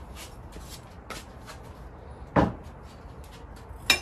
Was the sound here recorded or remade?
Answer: recorded